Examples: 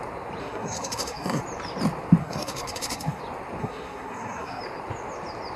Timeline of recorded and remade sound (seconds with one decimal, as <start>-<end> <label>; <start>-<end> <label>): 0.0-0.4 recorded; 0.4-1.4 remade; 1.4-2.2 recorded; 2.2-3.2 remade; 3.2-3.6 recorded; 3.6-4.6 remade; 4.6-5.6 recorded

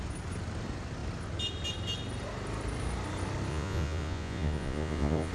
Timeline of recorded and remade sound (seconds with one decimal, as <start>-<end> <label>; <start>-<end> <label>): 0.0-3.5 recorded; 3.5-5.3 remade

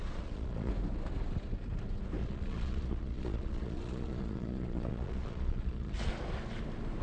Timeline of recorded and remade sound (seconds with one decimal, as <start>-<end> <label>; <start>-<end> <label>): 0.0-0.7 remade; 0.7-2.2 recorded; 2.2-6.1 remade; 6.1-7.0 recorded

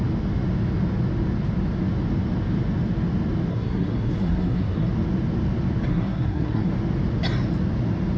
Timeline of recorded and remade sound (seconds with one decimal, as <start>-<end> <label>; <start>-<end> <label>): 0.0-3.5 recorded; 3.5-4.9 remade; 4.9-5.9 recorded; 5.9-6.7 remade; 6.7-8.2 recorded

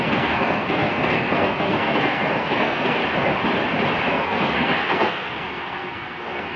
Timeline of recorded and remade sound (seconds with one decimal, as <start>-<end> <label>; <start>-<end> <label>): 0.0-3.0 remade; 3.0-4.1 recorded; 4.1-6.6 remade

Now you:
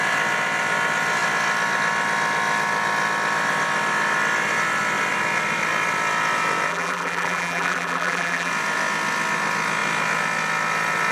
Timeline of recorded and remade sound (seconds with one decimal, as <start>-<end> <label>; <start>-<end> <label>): 0.0-6.7 recorded; 6.7-8.5 remade; 8.5-11.1 recorded

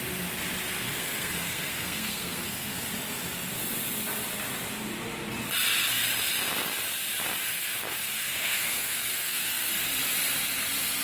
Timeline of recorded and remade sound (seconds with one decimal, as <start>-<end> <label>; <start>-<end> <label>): 0.0-0.7 recorded; 0.7-2.9 remade; 2.9-7.5 recorded; 7.5-9.7 remade; 9.7-11.0 recorded

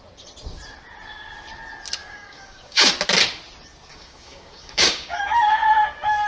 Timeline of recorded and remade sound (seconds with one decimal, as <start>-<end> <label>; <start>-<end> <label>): 0.0-2.0 recorded; 2.0-2.9 remade; 2.9-3.9 recorded; 3.9-5.2 remade; 5.2-6.3 recorded